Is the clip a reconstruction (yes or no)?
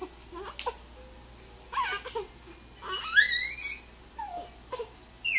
no